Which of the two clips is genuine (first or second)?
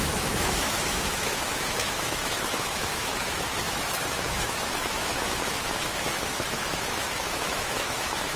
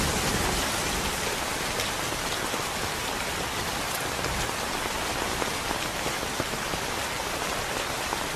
second